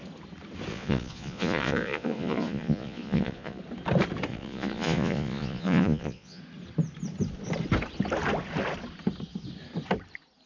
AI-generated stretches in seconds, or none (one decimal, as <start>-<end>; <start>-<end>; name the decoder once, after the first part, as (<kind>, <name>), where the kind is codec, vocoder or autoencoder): 0.7-3.6 (vocoder, Vocos); 4.3-6.4